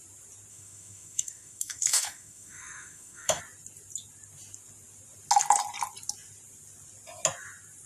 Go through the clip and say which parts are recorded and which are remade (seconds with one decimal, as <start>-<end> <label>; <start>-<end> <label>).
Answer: 0.0-0.5 recorded; 0.5-3.4 remade; 3.4-7.9 recorded